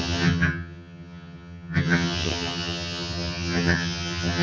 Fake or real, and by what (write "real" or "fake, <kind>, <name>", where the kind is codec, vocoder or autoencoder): fake, vocoder, HiFi-GAN